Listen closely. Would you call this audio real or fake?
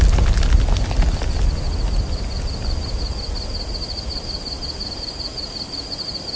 real